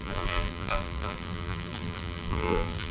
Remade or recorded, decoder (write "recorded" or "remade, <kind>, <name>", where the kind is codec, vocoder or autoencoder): remade, vocoder, BigVGAN v2